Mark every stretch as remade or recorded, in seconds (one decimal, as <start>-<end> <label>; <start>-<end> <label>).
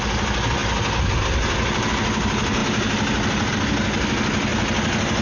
0.0-2.6 recorded; 2.6-3.5 remade; 3.5-5.2 recorded